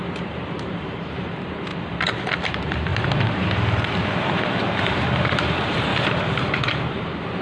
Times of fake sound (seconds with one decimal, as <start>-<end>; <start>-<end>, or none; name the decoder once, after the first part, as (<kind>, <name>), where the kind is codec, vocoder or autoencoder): 0.0-1.7 (vocoder, BigVGAN v2); 2.5-5.9; 6.5-7.4